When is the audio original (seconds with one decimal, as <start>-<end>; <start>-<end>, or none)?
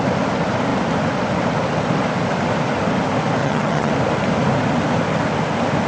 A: 0.0-3.4; 3.9-5.9